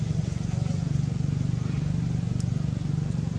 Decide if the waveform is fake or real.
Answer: real